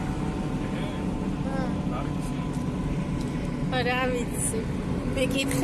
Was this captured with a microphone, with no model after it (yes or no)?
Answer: yes